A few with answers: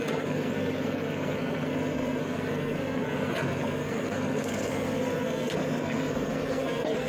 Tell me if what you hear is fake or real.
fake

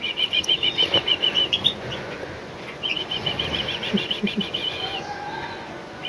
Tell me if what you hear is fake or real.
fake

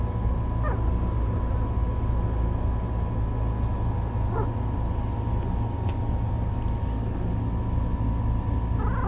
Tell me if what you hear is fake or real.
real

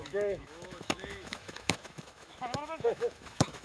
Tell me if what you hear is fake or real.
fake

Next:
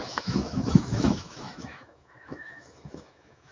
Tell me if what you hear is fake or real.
fake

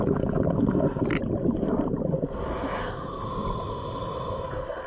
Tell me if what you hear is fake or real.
real